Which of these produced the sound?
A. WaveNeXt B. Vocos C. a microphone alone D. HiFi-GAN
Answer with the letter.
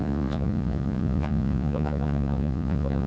B